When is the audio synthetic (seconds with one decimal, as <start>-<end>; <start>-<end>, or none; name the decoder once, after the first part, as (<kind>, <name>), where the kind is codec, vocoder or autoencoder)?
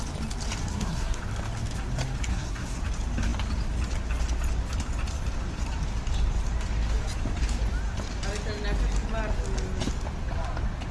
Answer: 0.7-1.2 (codec, SNAC); 2.3-2.8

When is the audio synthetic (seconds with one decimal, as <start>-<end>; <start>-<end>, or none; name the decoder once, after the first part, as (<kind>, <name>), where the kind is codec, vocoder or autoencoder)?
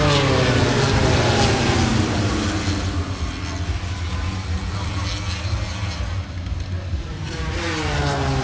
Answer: 6.9-7.5 (vocoder, BigVGAN v2)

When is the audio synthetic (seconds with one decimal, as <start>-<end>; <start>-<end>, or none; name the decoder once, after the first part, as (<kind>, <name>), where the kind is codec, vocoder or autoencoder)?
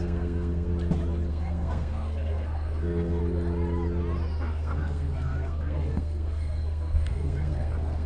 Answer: 0.0-0.7 (codec, SNAC); 1.3-3.2; 4.5-8.1